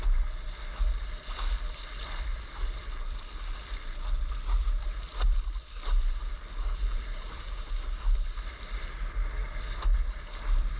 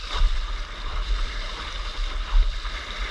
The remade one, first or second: second